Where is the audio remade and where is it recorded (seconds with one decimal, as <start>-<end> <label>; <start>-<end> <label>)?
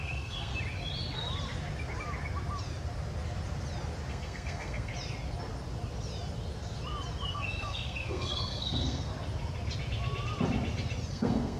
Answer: 0.0-0.5 remade; 0.5-4.1 recorded; 4.1-4.9 remade; 4.9-7.3 recorded; 7.3-9.1 remade; 9.1-11.1 recorded; 11.1-11.6 remade